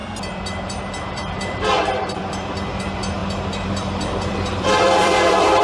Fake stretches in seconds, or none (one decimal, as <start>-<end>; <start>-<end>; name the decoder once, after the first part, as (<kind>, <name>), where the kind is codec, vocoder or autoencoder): 0.0-3.2 (vocoder, BigVGAN v2); 4.2-5.6